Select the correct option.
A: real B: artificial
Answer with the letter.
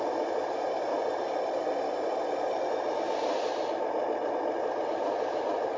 A